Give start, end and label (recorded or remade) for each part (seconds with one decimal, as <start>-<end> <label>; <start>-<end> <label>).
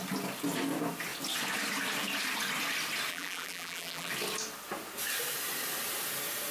0.0-3.1 recorded; 3.1-4.1 remade; 4.1-6.5 recorded